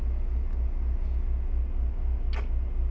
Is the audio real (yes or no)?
yes